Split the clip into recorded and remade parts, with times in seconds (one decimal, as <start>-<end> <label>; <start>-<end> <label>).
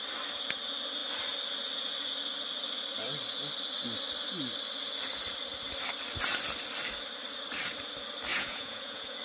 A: 0.0-8.3 recorded; 8.3-9.2 remade